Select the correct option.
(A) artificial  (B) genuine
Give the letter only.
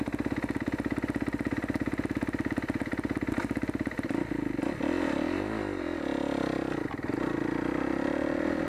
B